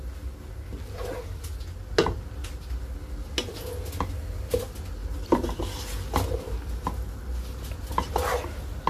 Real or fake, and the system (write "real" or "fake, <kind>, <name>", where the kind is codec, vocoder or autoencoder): real